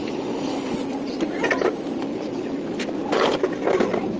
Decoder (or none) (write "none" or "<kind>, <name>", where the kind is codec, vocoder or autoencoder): none